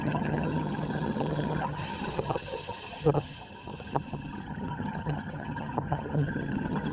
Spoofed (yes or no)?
yes